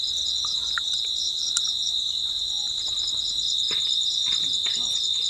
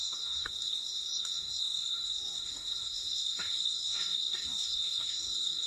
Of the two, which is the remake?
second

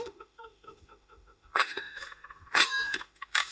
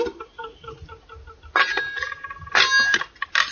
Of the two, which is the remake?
first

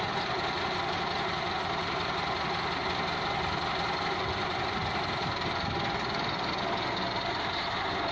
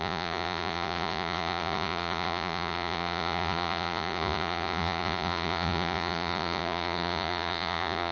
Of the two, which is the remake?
second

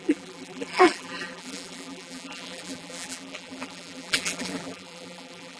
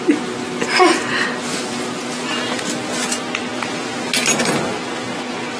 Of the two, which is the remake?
first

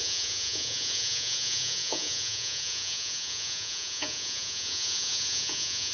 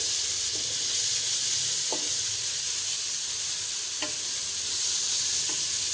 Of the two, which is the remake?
first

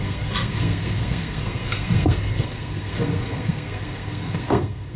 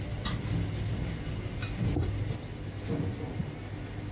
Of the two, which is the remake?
first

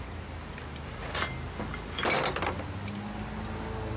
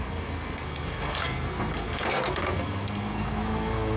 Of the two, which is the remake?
second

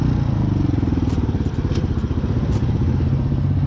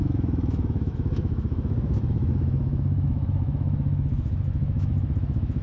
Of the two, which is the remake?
second